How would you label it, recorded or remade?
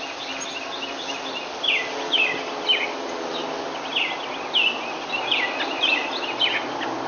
recorded